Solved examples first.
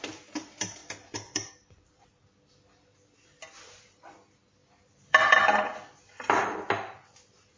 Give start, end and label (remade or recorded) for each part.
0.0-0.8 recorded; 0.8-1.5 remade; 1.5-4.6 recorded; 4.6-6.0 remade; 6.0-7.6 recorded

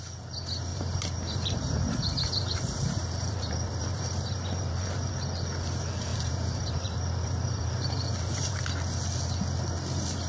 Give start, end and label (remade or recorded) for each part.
0.0-0.7 recorded; 0.7-5.1 remade; 5.1-6.1 recorded; 6.1-8.6 remade; 8.6-10.3 recorded

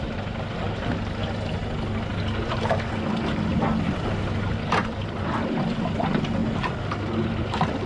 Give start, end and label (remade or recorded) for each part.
0.0-4.8 recorded; 4.8-5.6 remade; 5.6-7.9 recorded

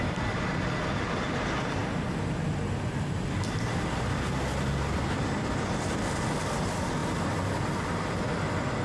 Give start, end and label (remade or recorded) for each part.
0.0-8.8 recorded

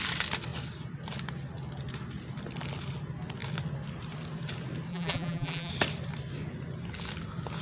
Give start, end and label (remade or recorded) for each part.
0.0-4.9 recorded; 4.9-5.7 remade; 5.7-7.6 recorded

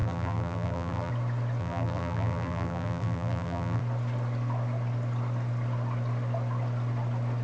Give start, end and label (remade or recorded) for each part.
0.0-1.1 remade; 1.1-1.6 recorded; 1.6-3.8 remade; 3.8-7.4 recorded